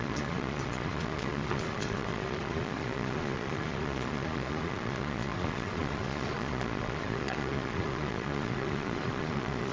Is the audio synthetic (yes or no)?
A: yes